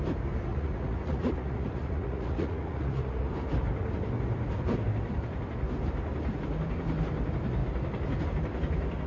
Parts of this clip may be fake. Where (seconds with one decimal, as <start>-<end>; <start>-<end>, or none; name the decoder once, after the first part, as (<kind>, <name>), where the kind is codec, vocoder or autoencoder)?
0.5-3.3 (vocoder, Vocos)